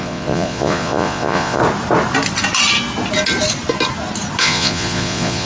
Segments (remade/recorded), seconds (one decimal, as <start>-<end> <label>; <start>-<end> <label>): 0.0-1.6 remade; 1.6-4.4 recorded; 4.4-5.5 remade